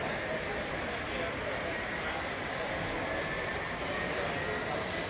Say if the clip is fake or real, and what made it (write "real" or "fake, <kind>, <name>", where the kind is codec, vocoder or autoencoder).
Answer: real